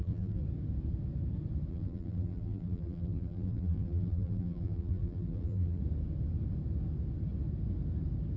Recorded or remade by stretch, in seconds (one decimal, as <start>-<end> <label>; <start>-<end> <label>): 0.0-0.4 remade; 0.4-1.7 recorded; 1.7-5.8 remade; 5.8-8.4 recorded